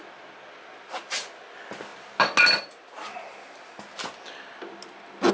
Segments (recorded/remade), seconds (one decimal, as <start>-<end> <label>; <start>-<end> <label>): 0.0-5.3 recorded

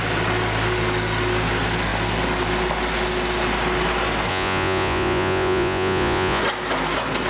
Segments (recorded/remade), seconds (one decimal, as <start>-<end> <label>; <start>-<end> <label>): 0.0-4.3 recorded; 4.3-6.4 remade; 6.4-7.3 recorded

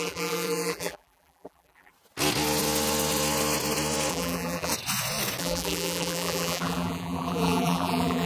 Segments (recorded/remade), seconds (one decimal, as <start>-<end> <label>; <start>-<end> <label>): 0.0-1.9 remade; 1.9-4.1 recorded; 4.1-4.7 remade; 4.7-5.4 recorded; 5.4-8.3 remade

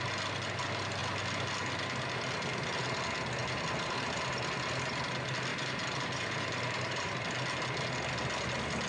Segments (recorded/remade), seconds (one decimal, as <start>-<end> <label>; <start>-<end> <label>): 0.0-5.5 recorded; 5.5-7.2 remade; 7.2-8.9 recorded

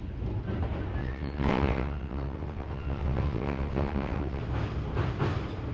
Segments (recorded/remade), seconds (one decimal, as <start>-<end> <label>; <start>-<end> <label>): 0.0-1.0 recorded; 1.0-4.4 remade; 4.4-5.7 recorded

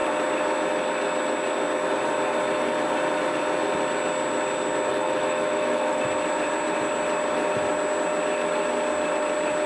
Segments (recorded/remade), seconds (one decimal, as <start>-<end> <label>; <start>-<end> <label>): 0.0-4.9 recorded; 4.9-6.0 remade; 6.0-9.7 recorded

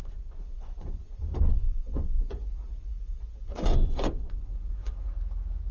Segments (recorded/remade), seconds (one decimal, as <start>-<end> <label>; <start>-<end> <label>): 0.0-5.1 remade; 5.1-5.7 recorded

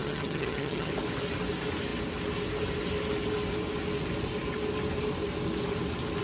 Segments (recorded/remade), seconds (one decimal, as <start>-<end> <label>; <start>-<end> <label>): 0.0-0.9 remade; 0.9-6.2 recorded